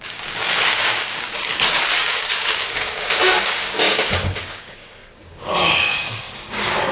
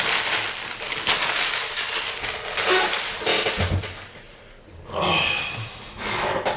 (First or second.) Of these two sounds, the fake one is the first